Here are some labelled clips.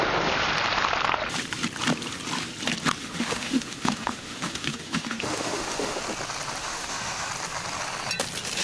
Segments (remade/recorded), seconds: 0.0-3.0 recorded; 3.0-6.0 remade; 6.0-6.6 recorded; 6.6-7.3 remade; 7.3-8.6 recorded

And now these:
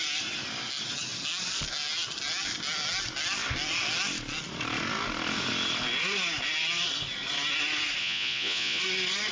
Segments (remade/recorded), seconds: 0.0-8.0 recorded; 8.0-8.8 remade; 8.8-9.3 recorded

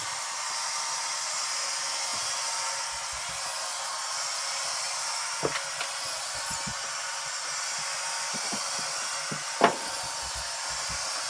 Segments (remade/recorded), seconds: 0.0-11.3 recorded

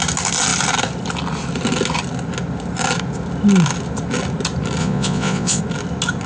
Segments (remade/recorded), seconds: 0.0-4.8 recorded; 4.8-5.6 remade; 5.6-6.3 recorded

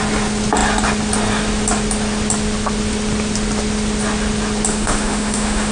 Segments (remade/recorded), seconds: 0.0-4.7 recorded; 4.7-5.7 remade